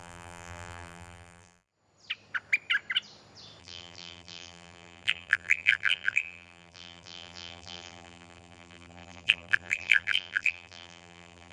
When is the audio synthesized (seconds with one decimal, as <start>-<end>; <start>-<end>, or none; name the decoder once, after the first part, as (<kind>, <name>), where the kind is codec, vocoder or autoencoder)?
0.0-1.7 (vocoder, BigVGAN v2); 3.6-11.5